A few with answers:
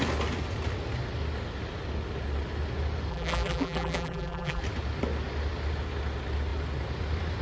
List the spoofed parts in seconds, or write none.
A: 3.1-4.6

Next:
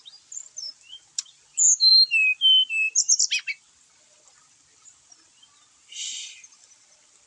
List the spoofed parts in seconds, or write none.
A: none

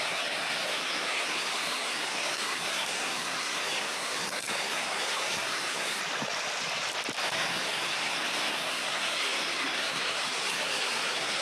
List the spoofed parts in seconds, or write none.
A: 0.0-6.0; 7.2-11.4